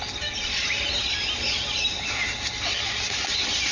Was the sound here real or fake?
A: real